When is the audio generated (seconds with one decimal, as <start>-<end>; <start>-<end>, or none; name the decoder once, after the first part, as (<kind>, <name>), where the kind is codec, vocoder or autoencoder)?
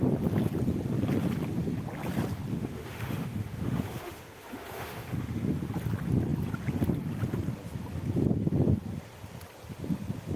2.5-5.7 (autoencoder, DAC-VAE)